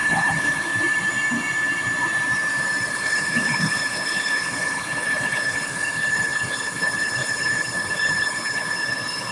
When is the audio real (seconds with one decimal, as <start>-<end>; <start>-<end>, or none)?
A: 0.7-2.9